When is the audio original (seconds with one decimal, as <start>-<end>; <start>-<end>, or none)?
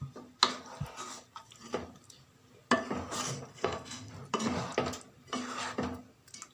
0.0-3.5; 4.1-6.5